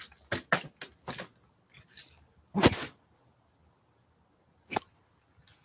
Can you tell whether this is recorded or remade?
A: recorded